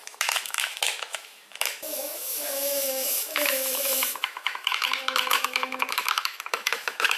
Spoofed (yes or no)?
yes